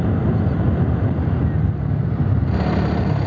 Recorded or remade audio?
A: recorded